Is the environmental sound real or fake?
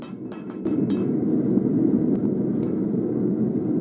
real